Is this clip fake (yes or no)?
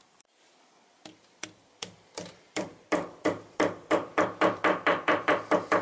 yes